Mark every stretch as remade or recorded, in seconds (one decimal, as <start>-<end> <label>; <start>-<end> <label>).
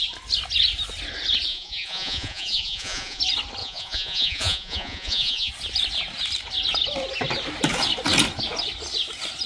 0.0-1.5 recorded; 1.5-3.2 remade; 3.2-3.6 recorded; 3.6-5.5 remade; 5.5-9.5 recorded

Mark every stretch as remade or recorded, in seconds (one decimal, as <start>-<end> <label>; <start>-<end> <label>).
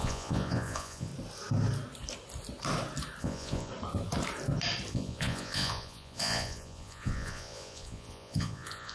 0.0-1.1 remade; 1.1-3.2 recorded; 3.2-3.7 remade; 3.7-4.9 recorded; 4.9-8.9 remade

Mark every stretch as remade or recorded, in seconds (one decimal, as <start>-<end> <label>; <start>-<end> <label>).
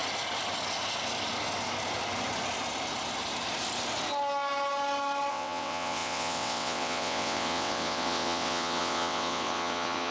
0.0-5.3 recorded; 5.3-10.1 remade